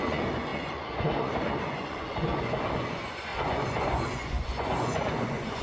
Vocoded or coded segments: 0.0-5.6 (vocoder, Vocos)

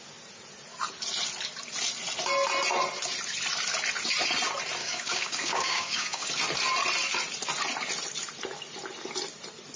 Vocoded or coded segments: 4.8-6.3 (codec, DAC)

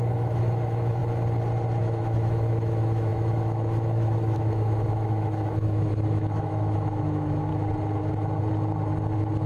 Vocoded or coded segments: 0.0-1.0 (autoencoder, DAC-VAE); 1.8-7.5

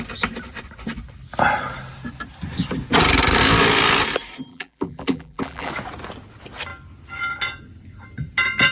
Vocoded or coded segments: 4.5-5.7 (vocoder, BigVGAN v2)

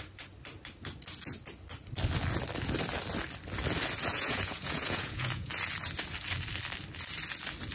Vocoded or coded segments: 4.1-5.5 (vocoder, Vocos)

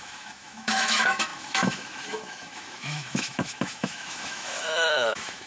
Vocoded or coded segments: 0.0-5.5 (autoencoder, DAC-VAE)